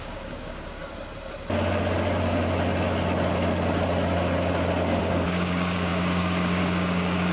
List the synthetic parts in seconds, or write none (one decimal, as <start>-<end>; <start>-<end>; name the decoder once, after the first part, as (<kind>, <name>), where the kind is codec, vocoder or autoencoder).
0.0-0.8 (codec, DAC); 5.0-7.3